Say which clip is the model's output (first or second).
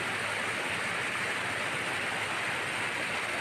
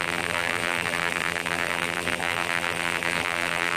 second